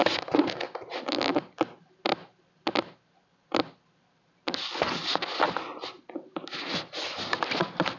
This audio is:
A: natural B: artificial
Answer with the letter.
A